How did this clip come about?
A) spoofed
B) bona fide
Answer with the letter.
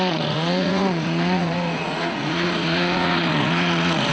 A